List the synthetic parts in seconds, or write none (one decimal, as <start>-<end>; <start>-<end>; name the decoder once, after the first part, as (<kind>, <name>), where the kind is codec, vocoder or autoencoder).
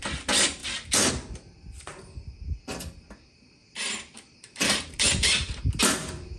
3.6-5.6 (vocoder, BigVGAN v2)